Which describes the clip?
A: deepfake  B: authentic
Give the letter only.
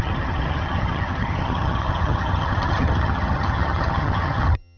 A